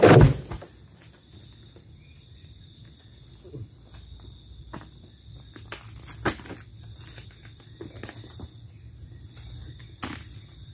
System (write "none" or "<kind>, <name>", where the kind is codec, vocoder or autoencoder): none